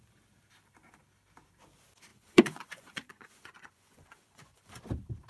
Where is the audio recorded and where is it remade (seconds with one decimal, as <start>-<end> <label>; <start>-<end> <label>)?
0.0-2.1 recorded; 2.1-4.8 remade; 4.8-5.3 recorded